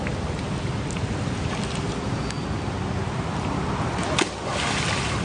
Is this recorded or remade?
recorded